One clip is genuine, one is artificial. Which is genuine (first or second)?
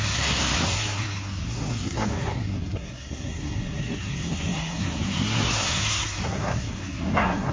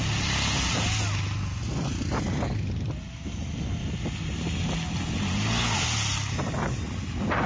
second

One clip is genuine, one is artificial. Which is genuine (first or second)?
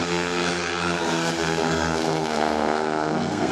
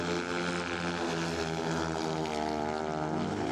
second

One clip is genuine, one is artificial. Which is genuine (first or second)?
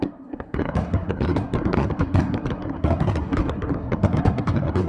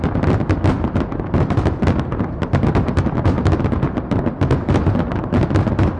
second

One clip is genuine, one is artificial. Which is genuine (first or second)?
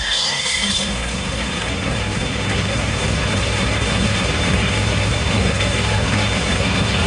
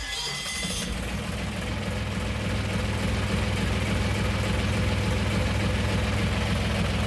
second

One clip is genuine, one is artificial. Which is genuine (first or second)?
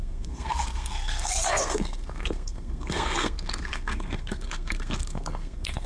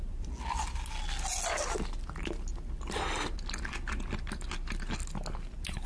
second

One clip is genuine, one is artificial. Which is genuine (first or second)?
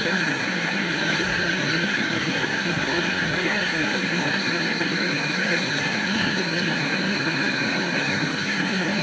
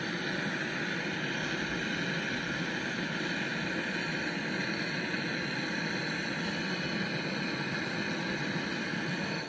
second